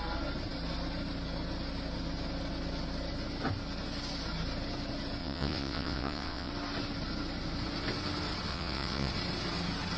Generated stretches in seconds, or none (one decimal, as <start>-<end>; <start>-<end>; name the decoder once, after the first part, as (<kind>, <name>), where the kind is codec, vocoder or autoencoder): 5.2-6.5 (vocoder, WaveNeXt); 8.5-9.1